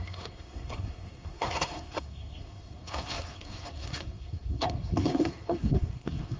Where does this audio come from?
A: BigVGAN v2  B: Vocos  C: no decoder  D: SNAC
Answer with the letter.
D